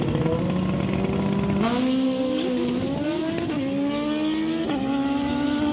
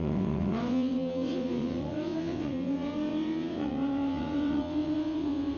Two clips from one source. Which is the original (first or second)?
first